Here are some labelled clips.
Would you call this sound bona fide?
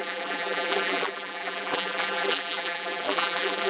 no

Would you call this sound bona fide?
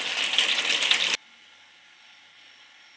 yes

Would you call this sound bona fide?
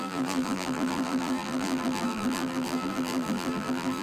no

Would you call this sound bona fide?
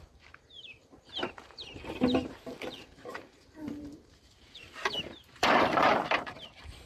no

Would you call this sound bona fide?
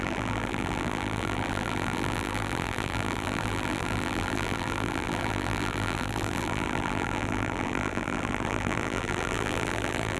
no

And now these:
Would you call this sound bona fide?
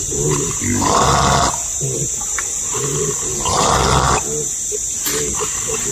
yes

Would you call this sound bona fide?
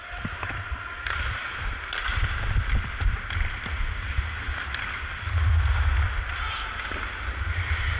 yes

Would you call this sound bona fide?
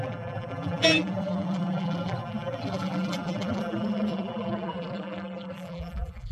no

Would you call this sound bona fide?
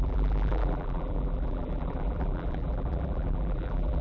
no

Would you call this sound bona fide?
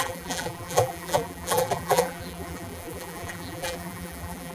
no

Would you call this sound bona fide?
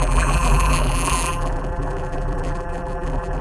no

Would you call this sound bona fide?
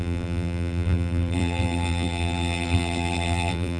no